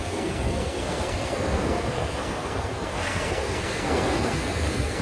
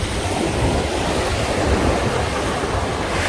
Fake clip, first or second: first